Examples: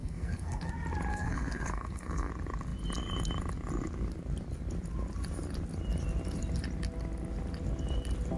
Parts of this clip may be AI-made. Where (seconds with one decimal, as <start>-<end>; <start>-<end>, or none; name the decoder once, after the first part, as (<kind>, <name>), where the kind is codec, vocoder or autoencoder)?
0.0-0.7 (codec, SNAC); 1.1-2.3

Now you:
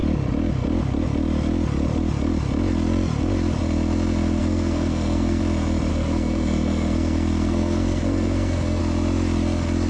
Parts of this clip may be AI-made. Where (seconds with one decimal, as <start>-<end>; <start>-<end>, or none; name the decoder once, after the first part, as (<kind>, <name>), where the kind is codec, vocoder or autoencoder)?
4.4-5.4 (codec, SNAC); 5.9-8.8

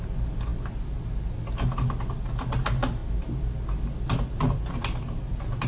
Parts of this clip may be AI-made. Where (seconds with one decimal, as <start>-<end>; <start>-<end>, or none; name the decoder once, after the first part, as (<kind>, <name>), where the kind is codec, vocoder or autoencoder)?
none

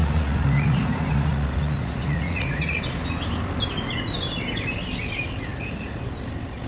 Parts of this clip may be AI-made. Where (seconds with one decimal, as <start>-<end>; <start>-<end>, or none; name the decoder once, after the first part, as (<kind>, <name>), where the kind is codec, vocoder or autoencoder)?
0.0-2.8 (vocoder, Vocos); 5.5-6.0